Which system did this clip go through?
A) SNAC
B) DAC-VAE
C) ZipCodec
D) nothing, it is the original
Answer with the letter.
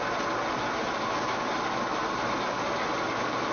D